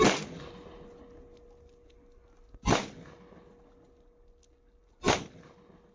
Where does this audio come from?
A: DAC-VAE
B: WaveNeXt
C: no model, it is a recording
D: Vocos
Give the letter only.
C